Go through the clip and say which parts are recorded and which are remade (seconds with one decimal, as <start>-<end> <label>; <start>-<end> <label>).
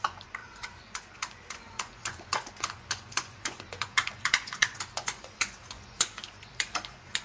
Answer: 0.0-7.2 remade